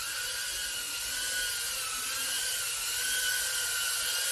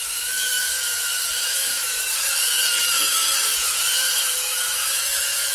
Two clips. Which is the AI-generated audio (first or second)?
second